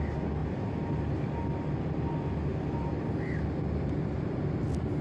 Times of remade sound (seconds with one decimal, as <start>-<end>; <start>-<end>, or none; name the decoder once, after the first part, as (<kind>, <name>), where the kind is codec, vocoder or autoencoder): 2.5-4.6 (vocoder, BigVGAN v2)

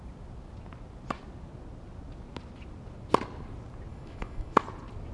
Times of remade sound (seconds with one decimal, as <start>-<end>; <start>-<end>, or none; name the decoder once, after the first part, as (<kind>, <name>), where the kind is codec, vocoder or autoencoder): 3.9-4.6 (autoencoder, DAC-VAE)

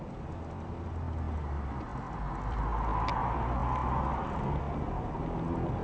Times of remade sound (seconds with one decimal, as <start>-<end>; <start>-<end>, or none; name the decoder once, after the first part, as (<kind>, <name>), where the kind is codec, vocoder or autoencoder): none

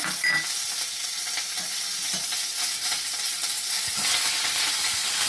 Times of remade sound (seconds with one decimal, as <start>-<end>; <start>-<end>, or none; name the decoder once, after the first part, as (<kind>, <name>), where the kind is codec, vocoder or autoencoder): none